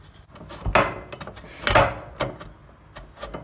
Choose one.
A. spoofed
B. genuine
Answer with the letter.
B